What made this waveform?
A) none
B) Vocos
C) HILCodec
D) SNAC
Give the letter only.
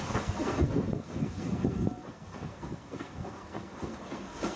D